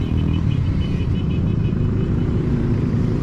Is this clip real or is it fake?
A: fake